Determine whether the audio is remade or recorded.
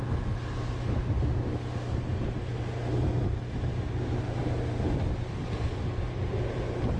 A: recorded